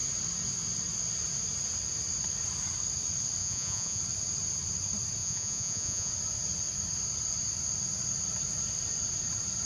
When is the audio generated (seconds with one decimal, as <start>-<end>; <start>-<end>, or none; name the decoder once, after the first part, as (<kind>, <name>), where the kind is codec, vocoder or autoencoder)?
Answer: 3.4-4.0 (vocoder, Vocos); 5.2-6.1